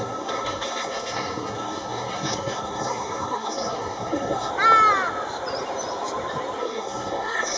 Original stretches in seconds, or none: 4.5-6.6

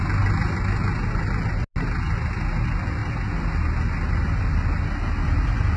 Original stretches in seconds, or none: 0.0-5.8

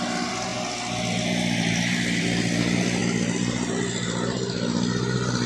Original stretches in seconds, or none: 0.0-5.5

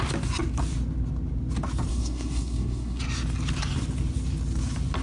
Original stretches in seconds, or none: 0.0-1.9; 3.0-5.0

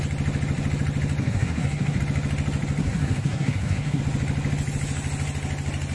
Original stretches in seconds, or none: 0.0-1.2; 2.0-2.8; 4.0-5.9

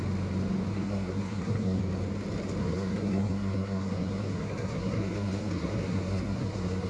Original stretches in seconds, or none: 0.0-0.7; 1.8-2.6

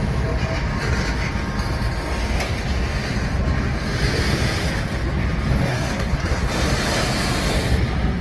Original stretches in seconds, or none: 0.0-5.7; 6.5-8.2